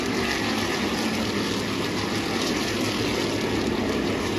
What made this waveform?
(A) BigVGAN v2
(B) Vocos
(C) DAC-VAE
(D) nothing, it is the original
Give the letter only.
D